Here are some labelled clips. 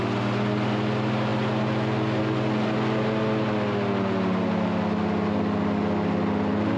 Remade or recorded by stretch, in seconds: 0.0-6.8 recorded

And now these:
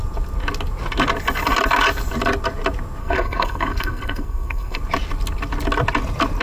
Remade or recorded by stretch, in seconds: 0.0-3.0 recorded; 3.0-4.8 remade; 4.8-6.4 recorded

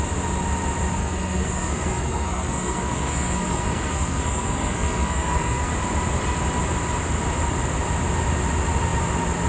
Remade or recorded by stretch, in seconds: 0.0-1.0 recorded; 1.0-5.7 remade; 5.7-9.5 recorded

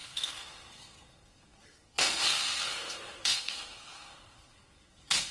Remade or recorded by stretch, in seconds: 0.0-5.3 remade